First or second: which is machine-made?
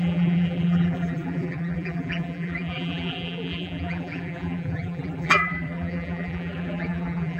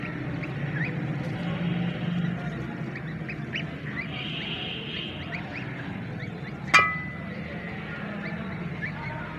first